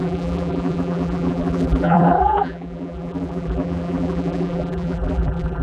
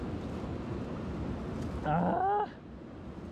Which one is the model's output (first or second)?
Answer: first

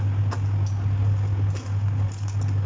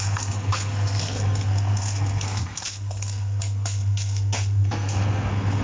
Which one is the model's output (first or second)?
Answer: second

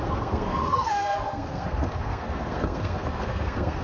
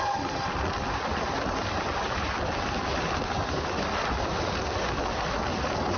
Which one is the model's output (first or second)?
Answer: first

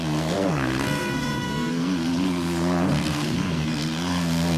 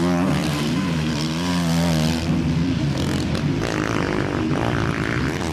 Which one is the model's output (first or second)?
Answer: first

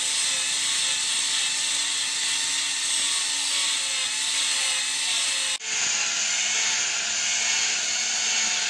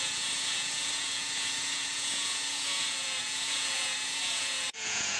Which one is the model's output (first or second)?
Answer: second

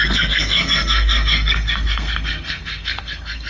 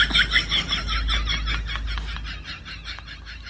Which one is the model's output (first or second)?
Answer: first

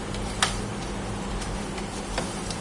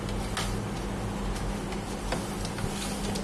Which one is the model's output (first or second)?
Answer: first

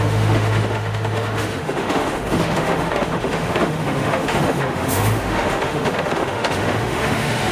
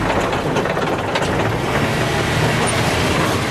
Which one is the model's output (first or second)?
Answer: first